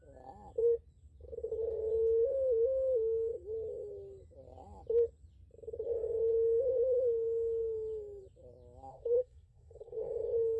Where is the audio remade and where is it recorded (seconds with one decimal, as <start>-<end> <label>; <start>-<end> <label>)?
0.0-8.9 recorded; 8.9-10.1 remade; 10.1-10.6 recorded